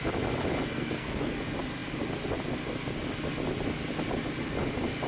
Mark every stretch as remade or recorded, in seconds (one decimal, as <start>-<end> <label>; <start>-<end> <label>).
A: 0.0-0.7 recorded; 0.7-1.3 remade; 1.3-5.1 recorded